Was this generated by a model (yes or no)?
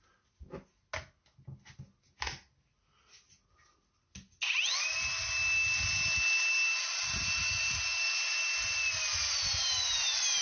no